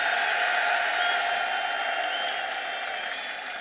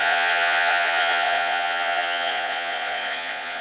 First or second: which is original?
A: first